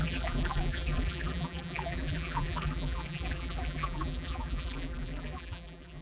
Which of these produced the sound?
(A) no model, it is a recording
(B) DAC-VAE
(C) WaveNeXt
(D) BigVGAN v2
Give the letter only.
D